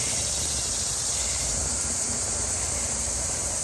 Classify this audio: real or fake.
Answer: fake